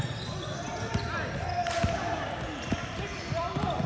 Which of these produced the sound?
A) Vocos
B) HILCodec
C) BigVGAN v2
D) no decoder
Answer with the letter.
D